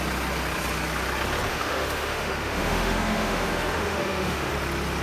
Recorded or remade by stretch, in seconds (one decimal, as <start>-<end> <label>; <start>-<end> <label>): 0.0-1.5 recorded; 1.5-4.5 remade; 4.5-5.0 recorded